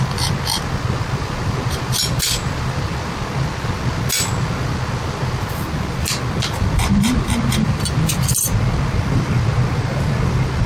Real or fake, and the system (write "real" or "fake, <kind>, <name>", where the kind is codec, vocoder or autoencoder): real